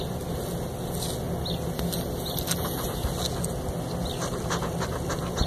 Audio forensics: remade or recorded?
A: recorded